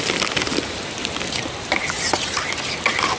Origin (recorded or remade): recorded